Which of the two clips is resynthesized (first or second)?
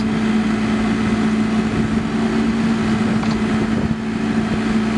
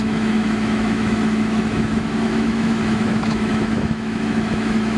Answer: second